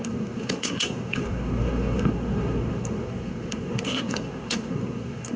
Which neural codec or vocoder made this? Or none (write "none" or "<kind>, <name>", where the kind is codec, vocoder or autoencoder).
codec, SNAC